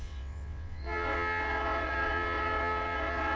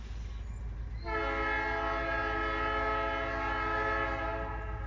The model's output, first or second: first